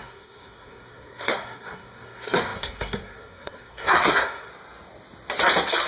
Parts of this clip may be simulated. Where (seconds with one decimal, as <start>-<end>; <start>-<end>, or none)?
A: 0.0-4.5